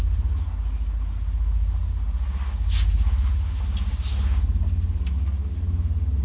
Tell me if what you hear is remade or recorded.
recorded